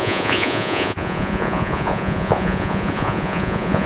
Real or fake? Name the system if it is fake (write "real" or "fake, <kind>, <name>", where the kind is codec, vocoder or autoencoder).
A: fake, vocoder, Vocos